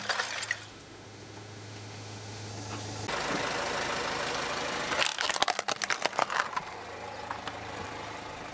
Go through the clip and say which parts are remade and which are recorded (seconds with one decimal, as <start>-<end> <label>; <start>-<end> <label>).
0.0-0.7 recorded; 0.7-2.5 remade; 2.5-8.5 recorded